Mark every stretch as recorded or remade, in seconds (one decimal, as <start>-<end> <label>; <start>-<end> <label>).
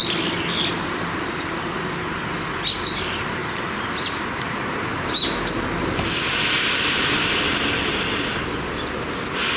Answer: 0.0-0.7 recorded; 0.7-3.4 remade; 3.4-6.7 recorded; 6.7-8.3 remade; 8.3-9.6 recorded